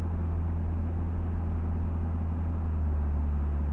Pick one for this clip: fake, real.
real